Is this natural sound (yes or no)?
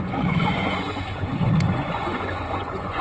no